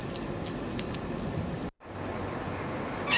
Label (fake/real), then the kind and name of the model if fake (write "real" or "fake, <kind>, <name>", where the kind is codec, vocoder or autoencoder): real